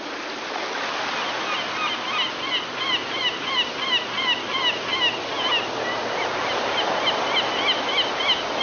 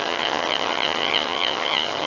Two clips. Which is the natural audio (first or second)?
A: first